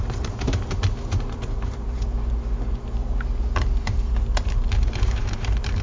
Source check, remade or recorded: remade